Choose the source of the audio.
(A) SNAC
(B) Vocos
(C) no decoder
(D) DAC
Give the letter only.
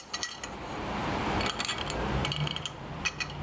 C